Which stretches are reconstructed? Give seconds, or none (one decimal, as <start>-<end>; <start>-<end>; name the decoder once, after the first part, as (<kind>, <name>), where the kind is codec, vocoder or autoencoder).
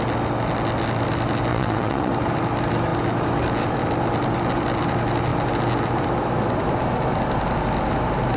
1.5-2.1 (vocoder, WaveNeXt)